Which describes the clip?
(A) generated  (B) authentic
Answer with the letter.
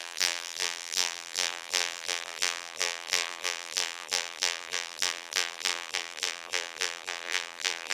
A